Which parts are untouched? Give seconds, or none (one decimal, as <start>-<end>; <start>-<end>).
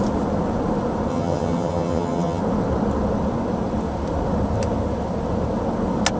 0.0-1.1; 2.4-6.2